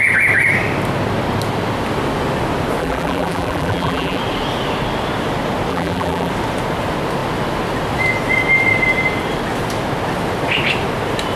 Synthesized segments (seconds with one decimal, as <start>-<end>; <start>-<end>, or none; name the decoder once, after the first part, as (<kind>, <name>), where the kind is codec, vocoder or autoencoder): 2.8-4.2 (vocoder, BigVGAN v2); 5.7-6.3